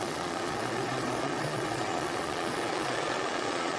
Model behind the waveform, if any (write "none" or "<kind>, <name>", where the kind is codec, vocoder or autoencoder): vocoder, Vocos